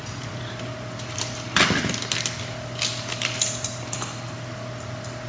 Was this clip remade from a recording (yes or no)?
no